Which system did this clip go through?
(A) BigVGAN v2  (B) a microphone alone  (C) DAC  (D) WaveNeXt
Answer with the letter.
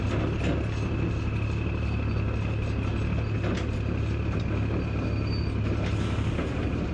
B